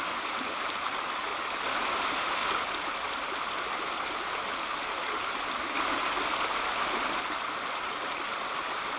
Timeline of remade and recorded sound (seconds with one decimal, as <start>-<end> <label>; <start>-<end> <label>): 0.0-9.0 recorded